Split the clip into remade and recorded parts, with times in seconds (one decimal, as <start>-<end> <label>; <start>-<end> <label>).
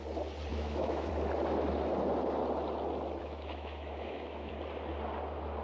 0.0-0.5 recorded; 0.5-1.1 remade; 1.1-3.2 recorded; 3.2-4.5 remade; 4.5-5.6 recorded